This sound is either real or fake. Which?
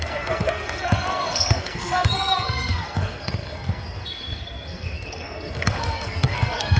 fake